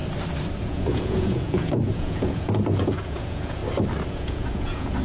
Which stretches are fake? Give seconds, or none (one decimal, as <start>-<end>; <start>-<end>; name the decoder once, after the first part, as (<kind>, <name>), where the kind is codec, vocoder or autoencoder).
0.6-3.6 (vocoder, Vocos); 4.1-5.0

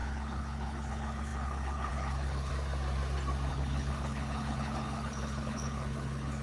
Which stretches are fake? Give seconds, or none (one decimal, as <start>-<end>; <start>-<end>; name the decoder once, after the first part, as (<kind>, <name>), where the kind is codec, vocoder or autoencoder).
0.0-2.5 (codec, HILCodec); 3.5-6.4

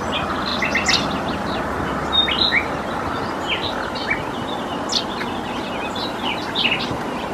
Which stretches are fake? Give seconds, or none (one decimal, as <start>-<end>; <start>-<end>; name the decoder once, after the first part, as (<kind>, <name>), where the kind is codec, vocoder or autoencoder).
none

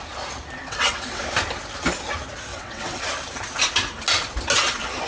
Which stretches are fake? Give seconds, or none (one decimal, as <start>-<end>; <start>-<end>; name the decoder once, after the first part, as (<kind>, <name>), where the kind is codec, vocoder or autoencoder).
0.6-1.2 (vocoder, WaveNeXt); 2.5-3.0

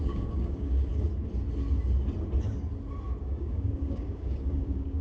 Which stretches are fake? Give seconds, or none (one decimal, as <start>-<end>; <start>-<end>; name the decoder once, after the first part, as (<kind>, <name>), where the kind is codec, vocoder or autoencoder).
0.0-0.9 (codec, DAC); 3.2-5.0

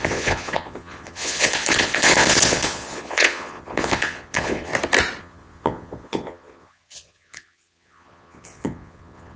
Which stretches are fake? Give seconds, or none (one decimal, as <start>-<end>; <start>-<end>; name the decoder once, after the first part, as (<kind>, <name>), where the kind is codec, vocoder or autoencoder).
0.0-4.7 (vocoder, Vocos); 5.2-9.4

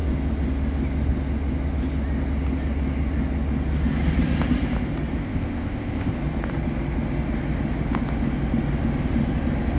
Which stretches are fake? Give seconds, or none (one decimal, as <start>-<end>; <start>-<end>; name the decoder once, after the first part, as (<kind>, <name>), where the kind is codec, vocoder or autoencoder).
5.2-6.1 (codec, ZipCodec)

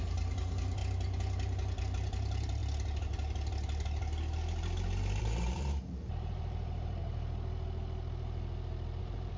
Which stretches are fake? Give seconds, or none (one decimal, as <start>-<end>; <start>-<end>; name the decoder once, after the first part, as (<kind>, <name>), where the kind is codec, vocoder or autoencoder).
0.0-0.8 (vocoder, BigVGAN v2); 1.9-2.6; 5.2-7.0; 9.0-9.4